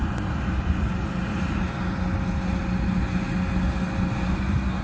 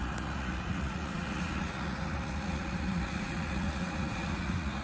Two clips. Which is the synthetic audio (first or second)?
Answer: second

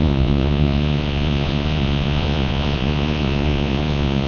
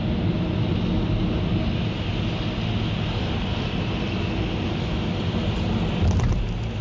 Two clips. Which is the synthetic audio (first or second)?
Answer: first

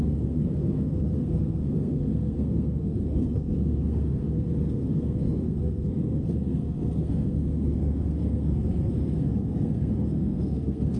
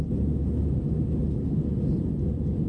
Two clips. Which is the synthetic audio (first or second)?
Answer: first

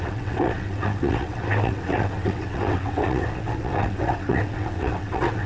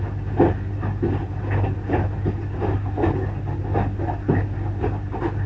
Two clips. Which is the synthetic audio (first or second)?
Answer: first